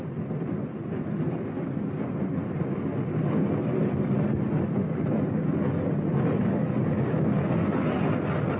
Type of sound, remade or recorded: recorded